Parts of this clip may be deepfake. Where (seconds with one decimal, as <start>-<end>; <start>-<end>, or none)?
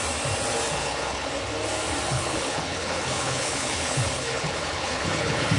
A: 0.8-1.3; 2.1-5.6